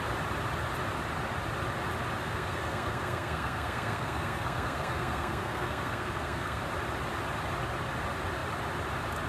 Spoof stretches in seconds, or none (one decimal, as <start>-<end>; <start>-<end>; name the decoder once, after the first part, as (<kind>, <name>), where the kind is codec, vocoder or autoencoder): 2.2-6.6 (codec, SNAC)